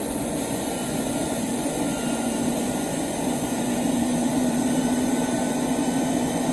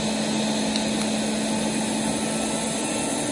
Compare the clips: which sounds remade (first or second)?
first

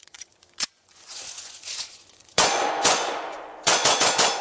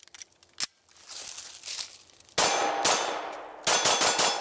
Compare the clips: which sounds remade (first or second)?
first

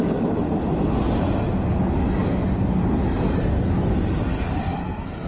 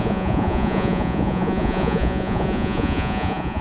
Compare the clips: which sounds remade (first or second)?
second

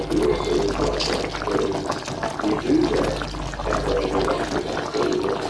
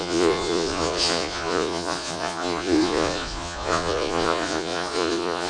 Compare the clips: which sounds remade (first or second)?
second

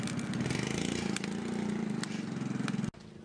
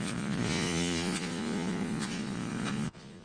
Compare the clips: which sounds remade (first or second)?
second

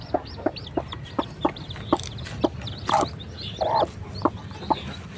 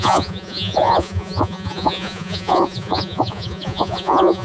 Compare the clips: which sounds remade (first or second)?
second